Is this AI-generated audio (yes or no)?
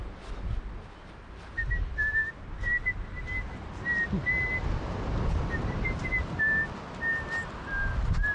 no